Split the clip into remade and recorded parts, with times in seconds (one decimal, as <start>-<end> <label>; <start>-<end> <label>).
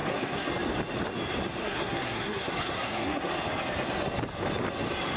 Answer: 0.0-0.5 remade; 0.5-1.6 recorded; 1.6-3.3 remade; 3.3-5.2 recorded